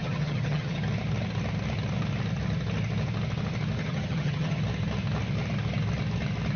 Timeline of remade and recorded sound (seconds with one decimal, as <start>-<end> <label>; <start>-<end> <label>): 0.0-0.8 remade; 0.8-3.8 recorded; 3.8-4.6 remade; 4.6-6.6 recorded